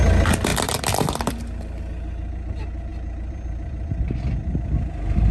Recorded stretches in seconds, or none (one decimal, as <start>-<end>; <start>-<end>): 0.0-0.5; 1.3-2.9